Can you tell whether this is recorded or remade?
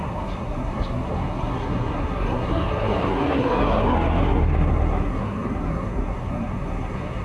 remade